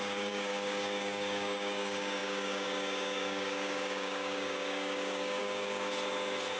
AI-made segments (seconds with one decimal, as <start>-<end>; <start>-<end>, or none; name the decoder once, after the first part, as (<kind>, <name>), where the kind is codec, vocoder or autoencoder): 0.0-5.9 (codec, DAC)